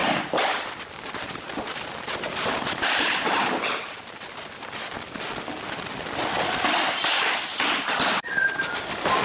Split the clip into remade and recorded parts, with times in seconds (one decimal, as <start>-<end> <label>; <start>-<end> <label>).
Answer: 0.0-0.7 remade; 0.7-9.2 recorded